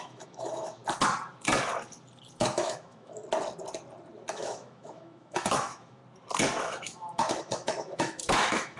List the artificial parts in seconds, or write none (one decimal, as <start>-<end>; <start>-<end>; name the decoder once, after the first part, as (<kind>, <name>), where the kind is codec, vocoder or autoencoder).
0.0-0.8 (autoencoder, DAC-VAE); 2.4-3.2; 4.3-6.0; 6.6-8.8

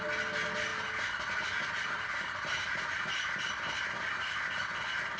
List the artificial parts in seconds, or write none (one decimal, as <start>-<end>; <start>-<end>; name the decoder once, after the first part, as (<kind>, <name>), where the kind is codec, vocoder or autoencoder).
none

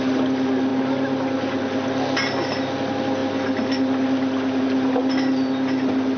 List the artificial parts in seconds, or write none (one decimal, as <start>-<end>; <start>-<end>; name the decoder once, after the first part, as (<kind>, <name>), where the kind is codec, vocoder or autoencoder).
none

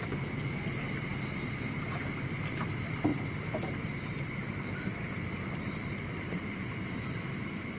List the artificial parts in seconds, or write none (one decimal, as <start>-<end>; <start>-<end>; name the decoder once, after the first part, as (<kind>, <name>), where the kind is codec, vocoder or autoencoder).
3.1-7.8 (vocoder, BigVGAN v2)